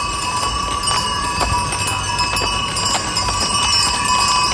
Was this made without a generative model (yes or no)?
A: yes